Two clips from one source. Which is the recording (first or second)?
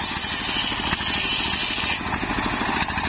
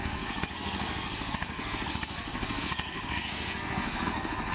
first